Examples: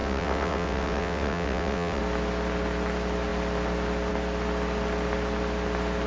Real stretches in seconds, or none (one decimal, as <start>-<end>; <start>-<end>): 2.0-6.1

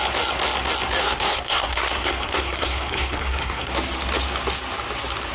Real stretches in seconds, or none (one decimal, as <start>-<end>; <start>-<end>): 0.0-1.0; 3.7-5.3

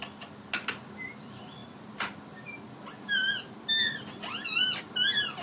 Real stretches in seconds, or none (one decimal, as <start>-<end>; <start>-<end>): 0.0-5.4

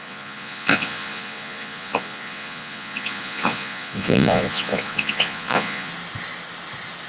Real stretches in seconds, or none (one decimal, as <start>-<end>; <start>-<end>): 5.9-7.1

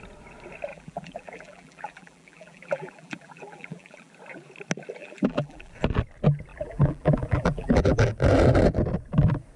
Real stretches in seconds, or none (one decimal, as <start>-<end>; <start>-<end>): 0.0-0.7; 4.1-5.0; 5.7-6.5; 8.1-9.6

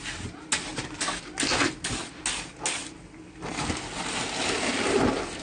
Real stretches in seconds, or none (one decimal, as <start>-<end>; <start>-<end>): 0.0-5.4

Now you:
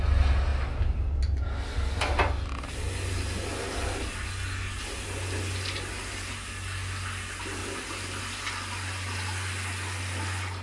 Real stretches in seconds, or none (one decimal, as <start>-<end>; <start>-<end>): 0.0-10.6